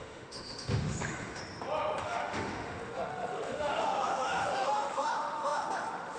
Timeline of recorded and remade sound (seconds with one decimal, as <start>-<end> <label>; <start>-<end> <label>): 0.0-1.4 remade; 1.4-2.0 recorded; 2.0-6.2 remade